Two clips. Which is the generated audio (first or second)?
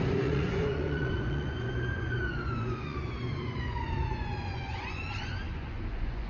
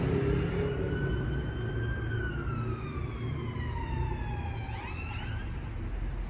first